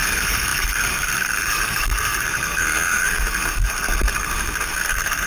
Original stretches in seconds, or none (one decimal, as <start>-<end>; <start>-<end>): none